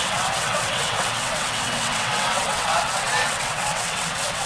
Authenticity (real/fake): fake